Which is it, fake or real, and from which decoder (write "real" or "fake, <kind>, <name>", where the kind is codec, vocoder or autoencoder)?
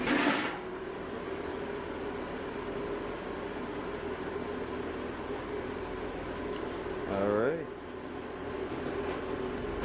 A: real